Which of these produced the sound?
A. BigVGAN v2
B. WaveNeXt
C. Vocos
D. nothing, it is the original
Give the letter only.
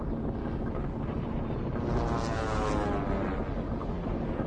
D